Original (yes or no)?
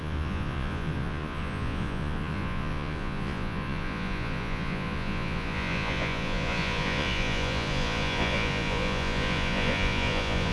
no